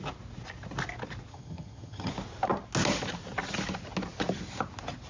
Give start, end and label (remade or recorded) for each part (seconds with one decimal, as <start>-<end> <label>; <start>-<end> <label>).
0.0-1.3 recorded; 1.3-2.1 remade; 2.1-5.1 recorded